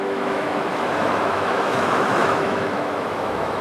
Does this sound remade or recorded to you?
remade